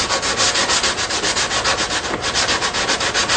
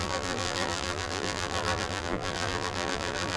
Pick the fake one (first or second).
second